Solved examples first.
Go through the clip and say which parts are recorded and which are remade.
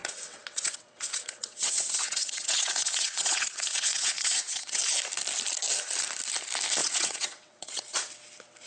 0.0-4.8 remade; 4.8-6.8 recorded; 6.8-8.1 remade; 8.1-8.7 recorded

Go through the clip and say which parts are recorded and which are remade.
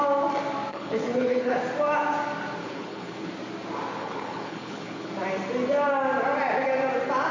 0.0-0.7 recorded; 0.7-1.6 remade; 1.6-2.6 recorded; 2.6-3.3 remade; 3.3-4.0 recorded; 4.0-5.1 remade; 5.1-7.3 recorded